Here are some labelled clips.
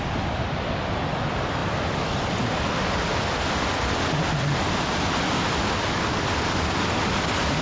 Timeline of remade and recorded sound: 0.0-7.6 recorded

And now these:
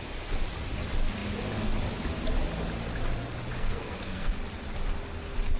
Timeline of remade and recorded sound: 0.0-3.5 recorded; 3.5-4.3 remade; 4.3-5.6 recorded

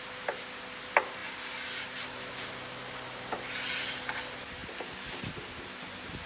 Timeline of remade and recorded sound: 0.0-6.3 recorded

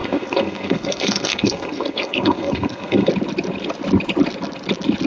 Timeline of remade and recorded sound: 0.0-3.1 remade; 3.1-5.1 recorded

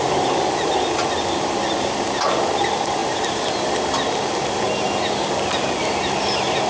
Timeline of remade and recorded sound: 0.0-6.7 recorded

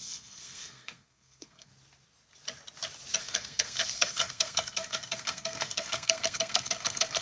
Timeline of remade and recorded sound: 0.0-1.7 remade; 1.7-3.2 recorded; 3.2-7.2 remade